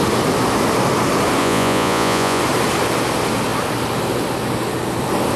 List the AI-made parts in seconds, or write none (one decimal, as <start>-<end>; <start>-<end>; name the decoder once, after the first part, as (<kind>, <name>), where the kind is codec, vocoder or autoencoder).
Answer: 1.4-2.4 (vocoder, Vocos)